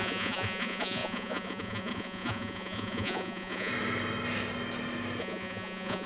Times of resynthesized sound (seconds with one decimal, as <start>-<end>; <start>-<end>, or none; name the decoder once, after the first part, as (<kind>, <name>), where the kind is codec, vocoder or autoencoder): 0.0-3.7 (vocoder, Vocos); 5.2-6.1